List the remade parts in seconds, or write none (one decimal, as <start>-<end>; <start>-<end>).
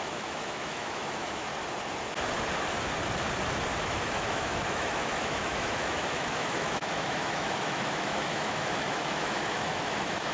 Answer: 0.0-1.5; 3.8-10.3